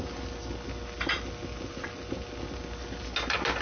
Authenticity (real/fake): real